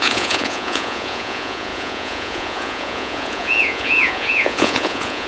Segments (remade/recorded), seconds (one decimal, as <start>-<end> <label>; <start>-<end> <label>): 0.0-5.3 remade